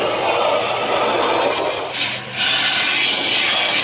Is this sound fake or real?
real